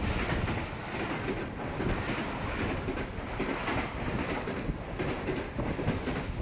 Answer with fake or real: real